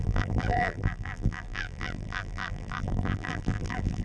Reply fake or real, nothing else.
fake